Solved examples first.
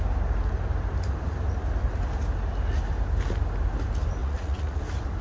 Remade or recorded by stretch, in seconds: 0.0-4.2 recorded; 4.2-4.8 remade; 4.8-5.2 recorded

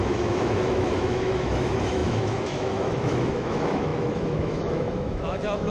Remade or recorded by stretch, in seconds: 0.0-5.7 remade